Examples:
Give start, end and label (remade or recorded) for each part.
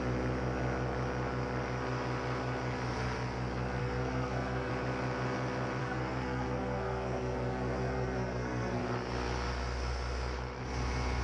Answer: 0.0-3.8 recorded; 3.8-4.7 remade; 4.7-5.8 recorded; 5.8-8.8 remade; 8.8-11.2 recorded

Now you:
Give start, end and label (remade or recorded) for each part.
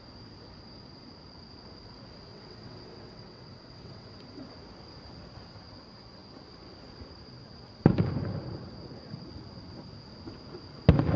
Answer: 0.0-2.3 recorded; 2.3-4.5 remade; 4.5-11.2 recorded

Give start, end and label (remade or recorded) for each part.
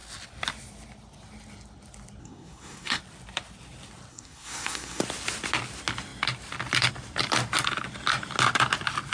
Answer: 0.0-2.2 recorded; 2.2-3.0 remade; 3.0-4.1 recorded; 4.1-5.0 remade; 5.0-9.1 recorded